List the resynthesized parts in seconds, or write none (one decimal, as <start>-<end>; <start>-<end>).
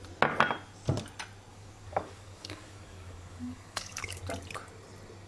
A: 1.5-4.2